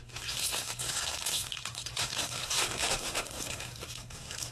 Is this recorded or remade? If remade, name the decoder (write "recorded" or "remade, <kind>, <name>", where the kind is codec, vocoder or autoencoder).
remade, codec, SNAC